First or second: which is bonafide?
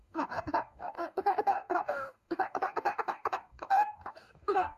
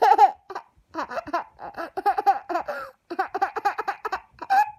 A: second